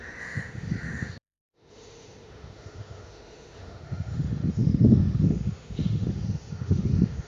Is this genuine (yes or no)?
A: no